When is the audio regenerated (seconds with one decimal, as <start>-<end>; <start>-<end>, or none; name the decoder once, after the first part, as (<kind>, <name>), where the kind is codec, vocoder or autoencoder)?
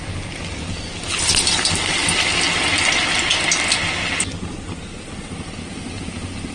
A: none